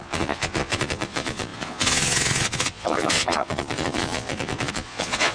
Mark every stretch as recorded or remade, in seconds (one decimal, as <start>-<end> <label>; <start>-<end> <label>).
0.0-5.3 remade